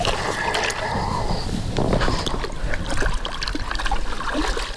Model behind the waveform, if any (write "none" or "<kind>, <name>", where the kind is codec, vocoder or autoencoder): none